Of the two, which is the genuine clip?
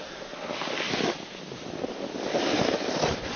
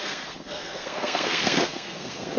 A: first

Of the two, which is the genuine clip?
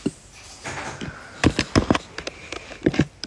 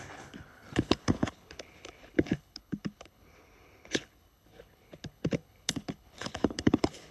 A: first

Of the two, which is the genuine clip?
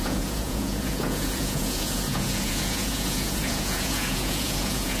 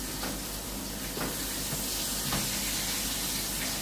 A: second